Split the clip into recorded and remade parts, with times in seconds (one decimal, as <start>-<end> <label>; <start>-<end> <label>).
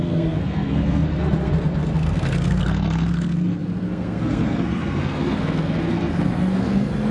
0.0-7.1 remade